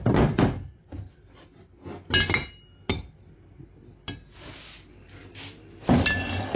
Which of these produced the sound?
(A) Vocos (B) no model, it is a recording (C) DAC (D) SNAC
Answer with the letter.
B